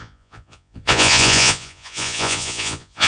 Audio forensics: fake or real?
fake